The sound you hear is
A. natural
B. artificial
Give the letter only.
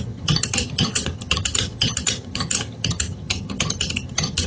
B